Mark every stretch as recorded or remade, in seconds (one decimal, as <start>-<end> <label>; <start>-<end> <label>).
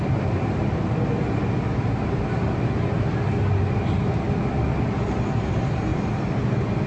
0.0-6.9 recorded